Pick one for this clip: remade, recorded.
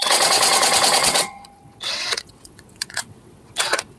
remade